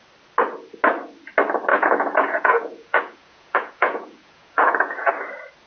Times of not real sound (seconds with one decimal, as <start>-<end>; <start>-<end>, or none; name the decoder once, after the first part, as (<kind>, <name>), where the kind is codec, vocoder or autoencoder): 1.7-5.1 (vocoder, Vocos)